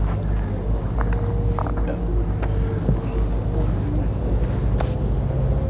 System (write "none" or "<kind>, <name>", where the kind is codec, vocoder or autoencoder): none